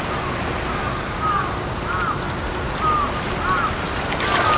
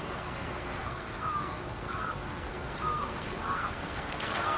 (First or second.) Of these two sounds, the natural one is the first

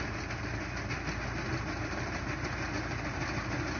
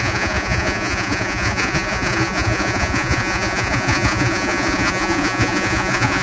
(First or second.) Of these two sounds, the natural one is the first